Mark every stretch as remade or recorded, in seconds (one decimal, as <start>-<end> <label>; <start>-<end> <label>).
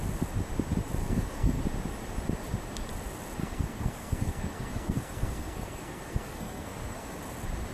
0.0-1.0 recorded; 1.0-1.6 remade; 1.6-3.4 recorded; 3.4-7.2 remade; 7.2-7.7 recorded